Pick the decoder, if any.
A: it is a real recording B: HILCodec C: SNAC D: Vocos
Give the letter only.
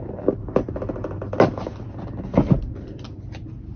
A